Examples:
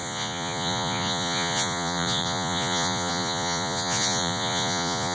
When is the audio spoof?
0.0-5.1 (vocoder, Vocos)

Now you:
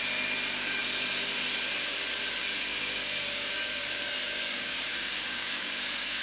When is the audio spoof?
2.4-6.2 (codec, DAC)

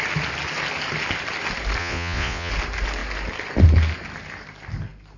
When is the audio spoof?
1.8-2.5 (vocoder, Vocos)

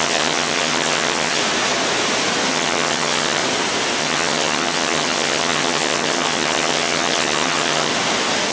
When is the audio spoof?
0.0-1.4 (vocoder, HiFi-GAN); 2.5-3.4; 4.0-7.9

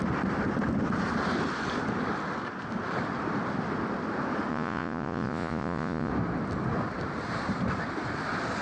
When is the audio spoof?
4.5-6.1 (vocoder, Vocos)

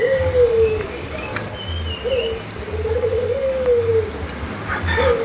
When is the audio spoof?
0.0-1.3 (codec, DAC); 2.9-3.9; 4.8-5.2

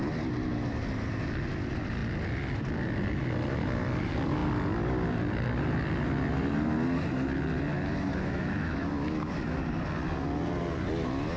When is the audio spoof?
8.1-9.6 (autoencoder, DAC-VAE)

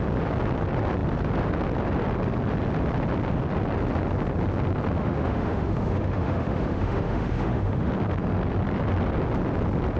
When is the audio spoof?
5.0-7.9 (autoencoder, DAC-VAE)